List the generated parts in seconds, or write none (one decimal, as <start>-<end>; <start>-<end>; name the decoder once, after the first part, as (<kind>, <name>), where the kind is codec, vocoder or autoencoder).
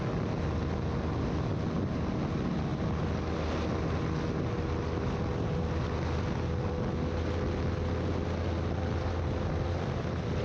none